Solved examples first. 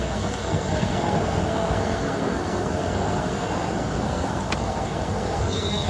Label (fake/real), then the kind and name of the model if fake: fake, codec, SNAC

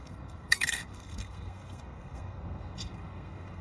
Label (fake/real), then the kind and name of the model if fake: fake, codec, SNAC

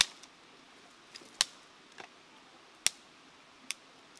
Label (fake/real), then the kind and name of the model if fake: real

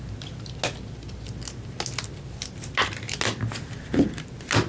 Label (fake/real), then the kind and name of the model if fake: real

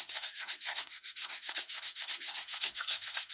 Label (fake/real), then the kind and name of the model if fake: fake, codec, SNAC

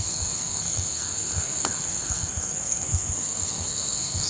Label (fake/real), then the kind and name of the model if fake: fake, codec, SNAC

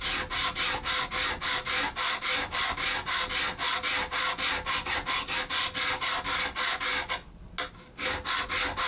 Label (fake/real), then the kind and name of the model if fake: real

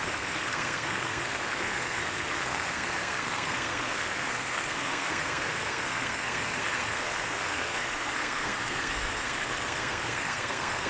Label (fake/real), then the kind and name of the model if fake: fake, codec, SNAC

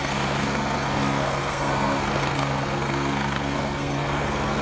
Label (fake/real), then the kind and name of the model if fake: fake, codec, SNAC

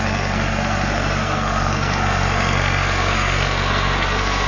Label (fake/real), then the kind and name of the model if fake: fake, codec, SNAC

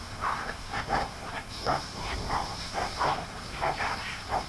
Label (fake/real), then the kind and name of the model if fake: fake, codec, SNAC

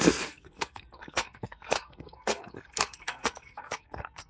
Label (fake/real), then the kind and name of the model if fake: fake, codec, SNAC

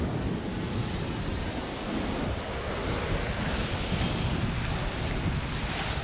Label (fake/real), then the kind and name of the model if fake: real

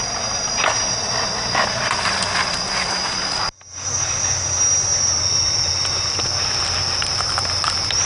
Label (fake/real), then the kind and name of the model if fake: real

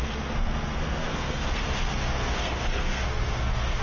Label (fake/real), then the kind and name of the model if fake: fake, codec, SNAC